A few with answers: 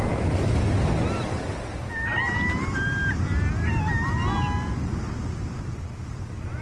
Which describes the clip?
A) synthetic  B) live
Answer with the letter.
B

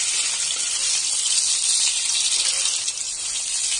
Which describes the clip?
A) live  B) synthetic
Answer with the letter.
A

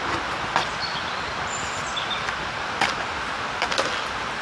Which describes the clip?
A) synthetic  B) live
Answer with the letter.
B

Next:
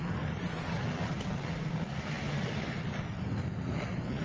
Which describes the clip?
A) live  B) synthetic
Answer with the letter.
A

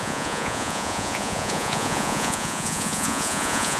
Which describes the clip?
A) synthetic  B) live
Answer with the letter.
A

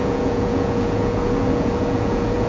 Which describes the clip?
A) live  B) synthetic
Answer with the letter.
B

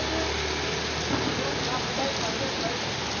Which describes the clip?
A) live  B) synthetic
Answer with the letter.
A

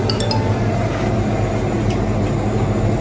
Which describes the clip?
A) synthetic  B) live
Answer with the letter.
B